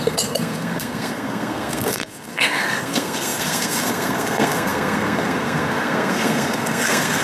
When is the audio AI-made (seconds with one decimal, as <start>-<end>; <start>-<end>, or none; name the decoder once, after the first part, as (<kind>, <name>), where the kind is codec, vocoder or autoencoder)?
0.0-7.2 (codec, SNAC)